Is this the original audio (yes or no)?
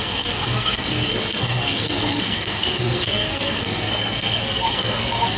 no